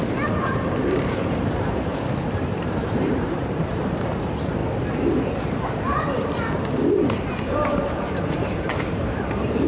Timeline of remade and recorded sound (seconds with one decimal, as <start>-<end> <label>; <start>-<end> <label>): 0.0-4.6 remade; 4.6-7.7 recorded; 7.7-9.7 remade